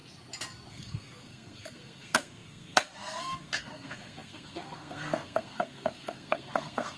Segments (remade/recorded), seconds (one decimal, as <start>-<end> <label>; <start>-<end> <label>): 0.0-0.7 recorded; 0.7-7.0 remade